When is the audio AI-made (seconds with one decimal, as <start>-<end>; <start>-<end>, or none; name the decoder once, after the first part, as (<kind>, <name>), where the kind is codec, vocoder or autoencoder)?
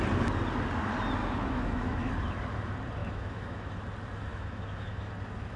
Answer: 1.2-2.1 (autoencoder, DAC-VAE); 3.0-3.7; 4.3-5.1